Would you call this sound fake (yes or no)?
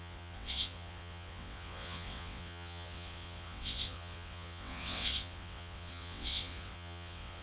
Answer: yes